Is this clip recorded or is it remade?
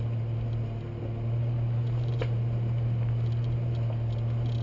recorded